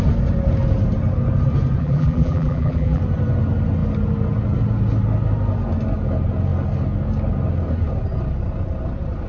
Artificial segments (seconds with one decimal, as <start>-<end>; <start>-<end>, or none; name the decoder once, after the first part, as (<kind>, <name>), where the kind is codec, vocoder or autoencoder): 1.8-3.0 (vocoder, BigVGAN v2)